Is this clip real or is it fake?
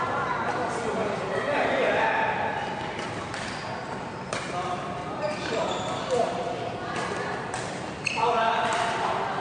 real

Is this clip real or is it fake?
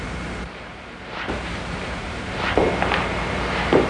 fake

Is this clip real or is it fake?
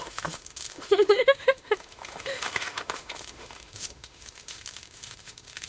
fake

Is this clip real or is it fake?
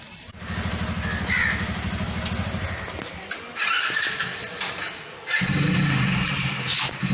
real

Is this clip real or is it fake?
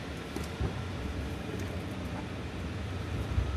real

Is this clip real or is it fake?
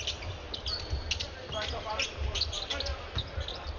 real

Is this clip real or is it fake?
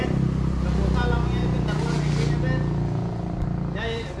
real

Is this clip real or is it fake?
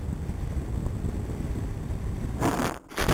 real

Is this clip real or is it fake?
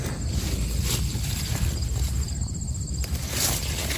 real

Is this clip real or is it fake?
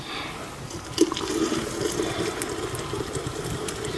real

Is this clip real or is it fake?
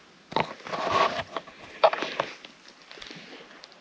real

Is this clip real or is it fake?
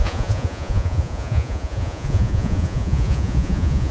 fake